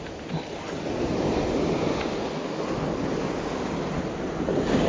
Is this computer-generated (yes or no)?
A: no